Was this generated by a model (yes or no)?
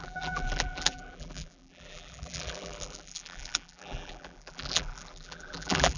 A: yes